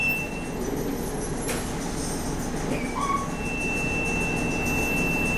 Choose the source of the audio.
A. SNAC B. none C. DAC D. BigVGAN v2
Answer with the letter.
B